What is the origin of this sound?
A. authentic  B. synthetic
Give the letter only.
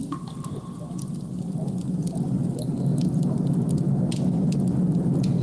A